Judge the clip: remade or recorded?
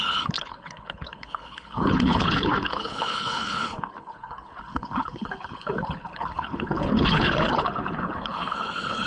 remade